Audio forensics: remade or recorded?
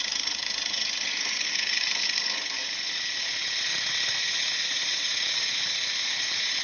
remade